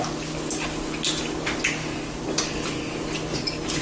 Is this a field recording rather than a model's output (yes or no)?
yes